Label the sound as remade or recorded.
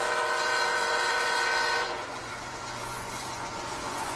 remade